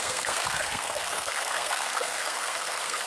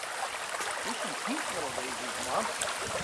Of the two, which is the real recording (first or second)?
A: second